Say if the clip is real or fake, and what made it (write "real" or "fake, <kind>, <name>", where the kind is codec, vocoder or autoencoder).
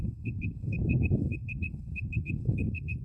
fake, codec, HILCodec